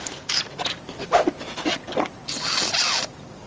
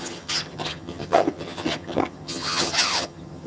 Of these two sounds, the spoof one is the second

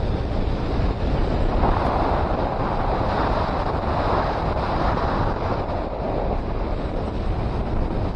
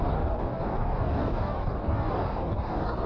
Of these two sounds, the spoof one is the second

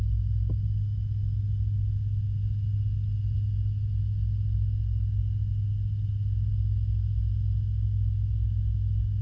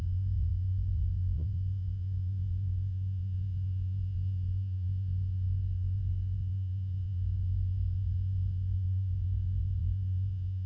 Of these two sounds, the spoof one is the second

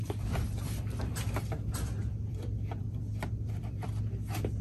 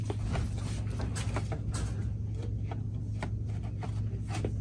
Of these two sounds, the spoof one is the first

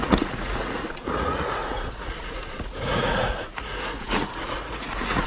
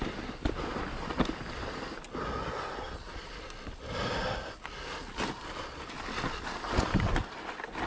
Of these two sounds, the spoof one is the first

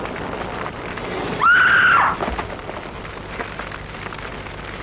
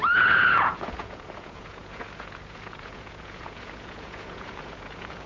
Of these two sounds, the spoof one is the second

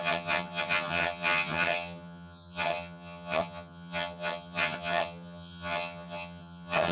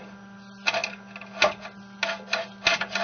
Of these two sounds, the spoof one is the first